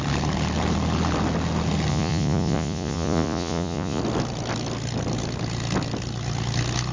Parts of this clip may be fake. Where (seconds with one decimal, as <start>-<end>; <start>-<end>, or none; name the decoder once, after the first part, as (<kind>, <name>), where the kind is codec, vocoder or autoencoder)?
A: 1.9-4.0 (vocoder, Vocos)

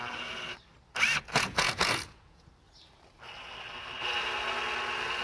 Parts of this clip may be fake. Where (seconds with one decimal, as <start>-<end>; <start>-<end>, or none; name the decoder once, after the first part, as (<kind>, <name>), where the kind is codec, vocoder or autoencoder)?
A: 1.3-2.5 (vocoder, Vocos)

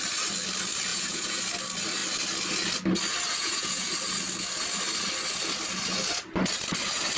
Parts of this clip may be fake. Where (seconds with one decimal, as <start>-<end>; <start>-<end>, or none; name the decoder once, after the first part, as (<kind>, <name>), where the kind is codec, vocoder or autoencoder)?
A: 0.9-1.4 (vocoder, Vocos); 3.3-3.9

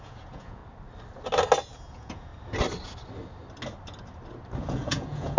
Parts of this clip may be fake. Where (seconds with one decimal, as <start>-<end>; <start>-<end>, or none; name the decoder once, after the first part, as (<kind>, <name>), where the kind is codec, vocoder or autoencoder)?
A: 0.0-0.6 (vocoder, Vocos); 1.9-2.3; 4.6-5.4